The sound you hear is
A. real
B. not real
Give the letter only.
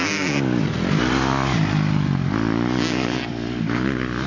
A